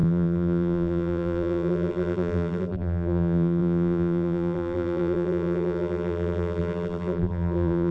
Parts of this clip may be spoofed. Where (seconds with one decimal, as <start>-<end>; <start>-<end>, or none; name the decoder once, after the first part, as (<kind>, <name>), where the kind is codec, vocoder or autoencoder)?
0.0-7.9 (vocoder, BigVGAN v2)